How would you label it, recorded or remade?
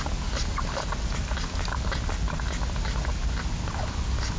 recorded